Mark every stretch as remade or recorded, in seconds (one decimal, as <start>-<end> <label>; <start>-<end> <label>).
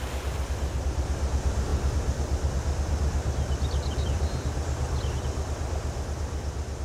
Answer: 0.0-6.8 recorded